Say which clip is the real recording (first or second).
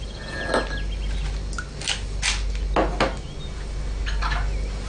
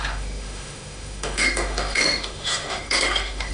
first